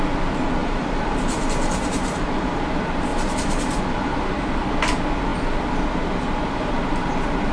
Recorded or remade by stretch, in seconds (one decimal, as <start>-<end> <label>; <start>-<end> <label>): 0.0-0.6 recorded; 0.6-2.6 remade; 2.6-3.1 recorded; 3.1-4.1 remade; 4.1-7.5 recorded